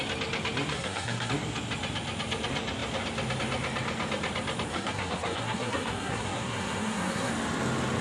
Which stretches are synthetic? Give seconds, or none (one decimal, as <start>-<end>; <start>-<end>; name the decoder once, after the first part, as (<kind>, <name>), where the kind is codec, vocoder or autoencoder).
0.7-1.3 (codec, SNAC); 4.7-7.3